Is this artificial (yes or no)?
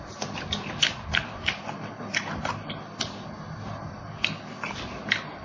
no